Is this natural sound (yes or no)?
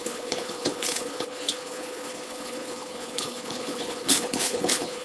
no